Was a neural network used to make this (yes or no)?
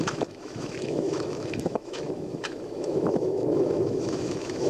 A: yes